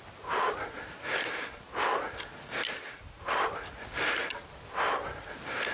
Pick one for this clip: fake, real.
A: real